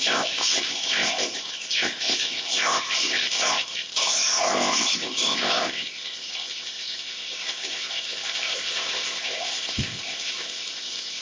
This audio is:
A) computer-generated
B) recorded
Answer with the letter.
A